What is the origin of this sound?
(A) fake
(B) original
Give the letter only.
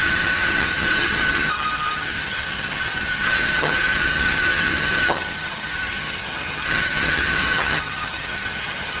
A